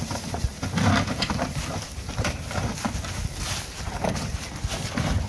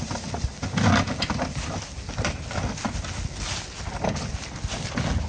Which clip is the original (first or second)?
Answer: second